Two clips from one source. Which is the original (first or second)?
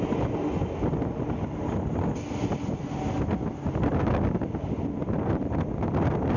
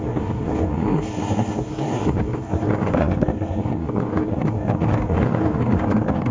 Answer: first